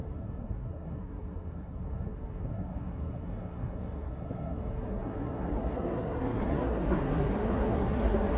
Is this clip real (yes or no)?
no